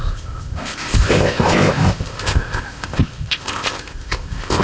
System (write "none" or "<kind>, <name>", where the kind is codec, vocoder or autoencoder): codec, ZipCodec